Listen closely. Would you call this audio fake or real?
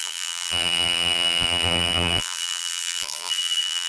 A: fake